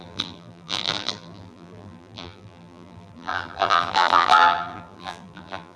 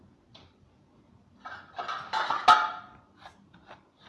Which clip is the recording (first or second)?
second